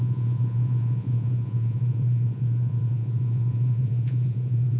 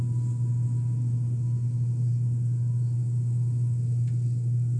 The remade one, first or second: first